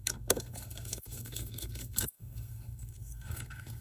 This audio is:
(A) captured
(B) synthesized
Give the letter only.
B